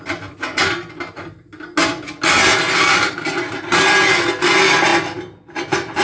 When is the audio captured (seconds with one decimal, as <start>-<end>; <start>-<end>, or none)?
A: 0.0-6.0